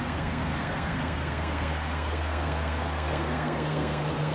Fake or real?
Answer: fake